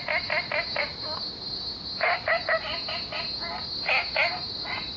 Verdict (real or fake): real